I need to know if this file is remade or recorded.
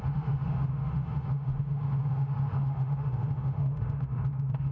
remade